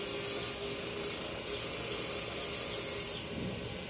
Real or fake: real